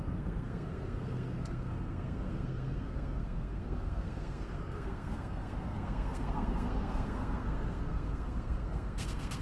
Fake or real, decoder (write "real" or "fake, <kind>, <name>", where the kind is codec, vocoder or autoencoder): fake, codec, SNAC